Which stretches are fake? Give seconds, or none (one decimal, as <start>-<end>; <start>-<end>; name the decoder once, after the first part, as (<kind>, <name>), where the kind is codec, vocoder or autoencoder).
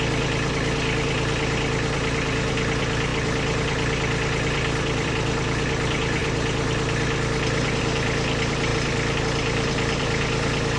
3.1-5.1 (vocoder, BigVGAN v2)